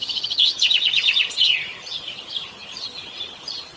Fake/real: fake